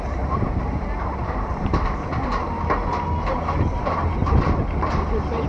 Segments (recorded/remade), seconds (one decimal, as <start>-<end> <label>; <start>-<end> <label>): 0.0-2.4 remade; 2.4-3.3 recorded; 3.3-4.2 remade; 4.2-4.8 recorded; 4.8-5.5 remade